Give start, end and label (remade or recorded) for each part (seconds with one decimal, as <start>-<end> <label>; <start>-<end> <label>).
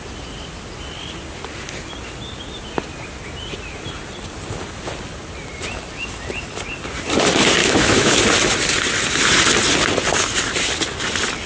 0.0-7.6 recorded; 7.6-8.2 remade; 8.2-11.5 recorded